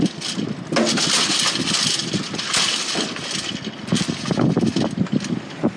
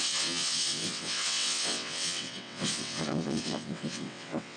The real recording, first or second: first